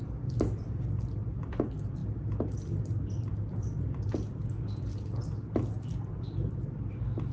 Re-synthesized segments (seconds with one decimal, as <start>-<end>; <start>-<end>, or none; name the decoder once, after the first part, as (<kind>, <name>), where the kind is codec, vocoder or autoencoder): 0.0-7.3 (vocoder, BigVGAN v2)

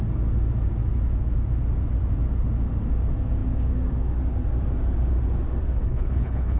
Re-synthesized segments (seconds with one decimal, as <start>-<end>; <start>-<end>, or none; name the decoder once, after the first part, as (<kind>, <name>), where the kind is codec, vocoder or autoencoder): 5.7-6.6 (codec, HILCodec)